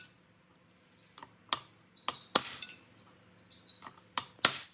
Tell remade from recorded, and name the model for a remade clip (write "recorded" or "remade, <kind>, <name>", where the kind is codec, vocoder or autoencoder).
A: recorded